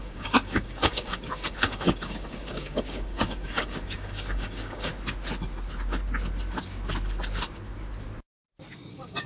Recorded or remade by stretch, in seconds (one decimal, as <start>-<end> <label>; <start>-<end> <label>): 0.0-4.9 remade; 4.9-8.9 recorded; 8.9-9.3 remade